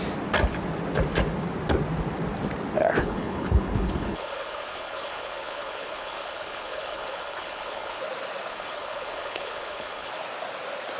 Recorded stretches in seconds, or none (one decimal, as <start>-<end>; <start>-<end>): 0.0-3.0; 8.0-8.5; 10.1-11.0